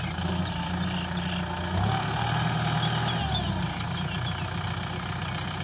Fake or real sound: real